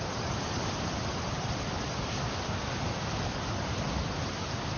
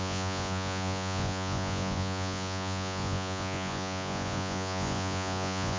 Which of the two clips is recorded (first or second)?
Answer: first